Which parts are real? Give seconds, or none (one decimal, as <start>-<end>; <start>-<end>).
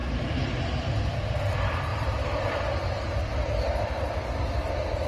0.6-1.9; 2.5-5.1